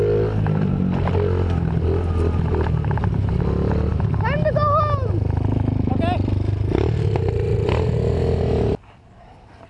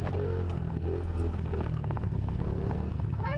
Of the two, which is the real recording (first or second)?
first